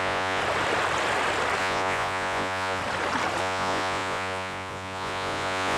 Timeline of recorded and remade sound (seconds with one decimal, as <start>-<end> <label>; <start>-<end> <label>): 0.0-0.4 remade; 0.4-1.6 recorded; 1.6-2.8 remade; 2.8-3.4 recorded; 3.4-5.8 remade